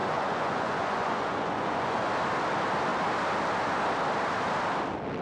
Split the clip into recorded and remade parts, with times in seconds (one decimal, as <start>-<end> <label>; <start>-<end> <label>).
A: 0.0-2.1 remade; 2.1-5.2 recorded